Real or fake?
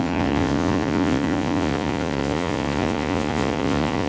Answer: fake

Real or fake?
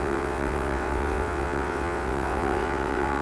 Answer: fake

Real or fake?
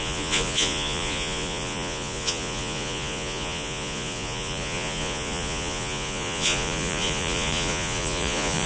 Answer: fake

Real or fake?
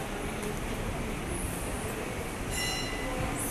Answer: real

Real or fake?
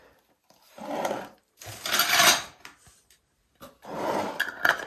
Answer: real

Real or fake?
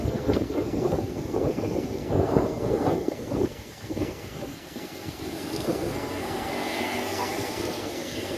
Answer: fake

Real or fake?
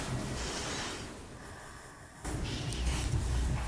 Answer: real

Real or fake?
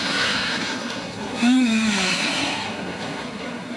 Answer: fake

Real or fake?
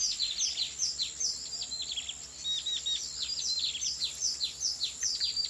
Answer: real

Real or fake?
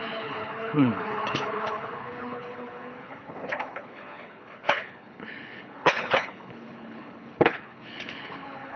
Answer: fake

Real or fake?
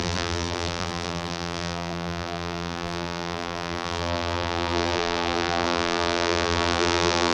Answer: fake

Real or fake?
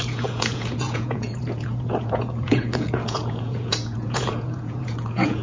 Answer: fake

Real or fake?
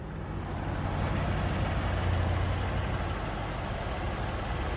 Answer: real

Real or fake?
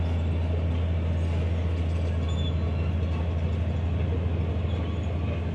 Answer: real